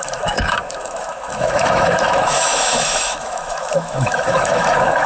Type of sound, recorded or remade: remade